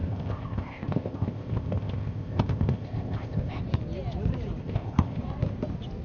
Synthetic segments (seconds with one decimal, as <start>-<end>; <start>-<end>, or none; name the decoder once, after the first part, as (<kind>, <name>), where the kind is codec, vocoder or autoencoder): 0.0-3.6 (codec, ZipCodec); 4.6-5.2